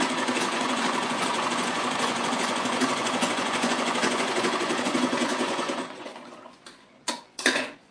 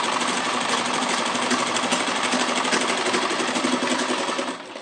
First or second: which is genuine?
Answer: second